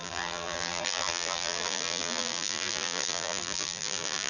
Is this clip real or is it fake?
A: fake